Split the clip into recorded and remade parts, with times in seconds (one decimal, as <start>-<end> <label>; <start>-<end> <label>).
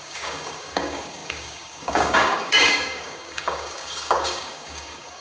0.0-5.2 remade